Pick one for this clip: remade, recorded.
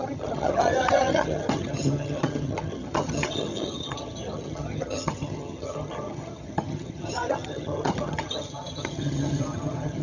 remade